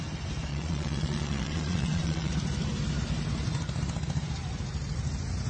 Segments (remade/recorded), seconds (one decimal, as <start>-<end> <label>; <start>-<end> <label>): 0.0-0.5 recorded; 0.5-2.3 remade; 2.3-5.5 recorded